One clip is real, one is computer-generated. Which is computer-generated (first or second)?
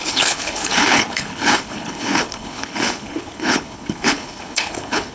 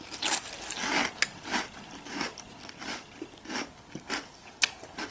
first